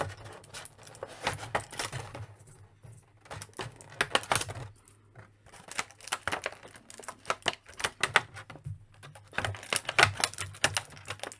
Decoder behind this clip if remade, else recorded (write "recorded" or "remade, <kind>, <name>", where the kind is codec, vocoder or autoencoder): recorded